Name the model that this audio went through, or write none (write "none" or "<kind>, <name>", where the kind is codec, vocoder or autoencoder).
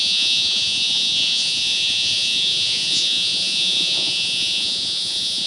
vocoder, Vocos